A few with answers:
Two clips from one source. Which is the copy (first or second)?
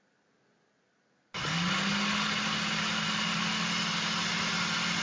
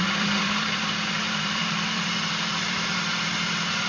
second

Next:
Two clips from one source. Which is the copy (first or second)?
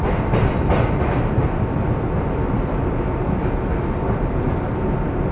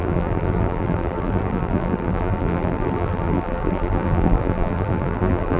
second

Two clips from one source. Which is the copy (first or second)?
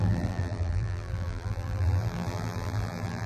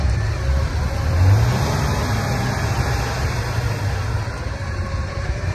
first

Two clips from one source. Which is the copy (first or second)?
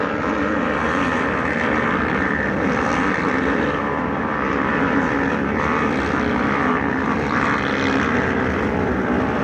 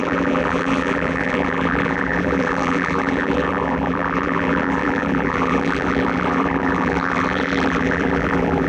second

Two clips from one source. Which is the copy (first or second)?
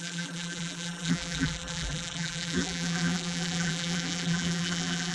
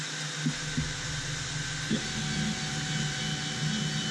first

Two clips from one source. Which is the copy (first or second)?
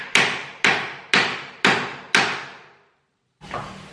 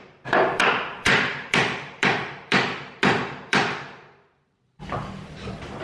second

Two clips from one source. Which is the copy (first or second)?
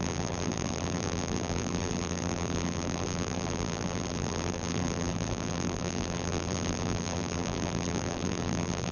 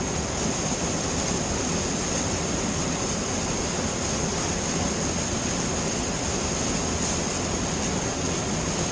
first